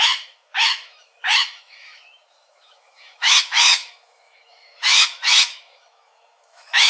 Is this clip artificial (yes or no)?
yes